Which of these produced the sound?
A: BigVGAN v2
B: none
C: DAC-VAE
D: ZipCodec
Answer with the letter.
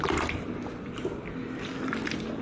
B